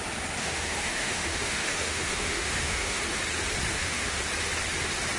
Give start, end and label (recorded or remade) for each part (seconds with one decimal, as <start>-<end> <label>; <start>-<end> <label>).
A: 0.0-0.4 recorded; 0.4-3.0 remade; 3.0-3.7 recorded; 3.7-4.2 remade; 4.2-5.2 recorded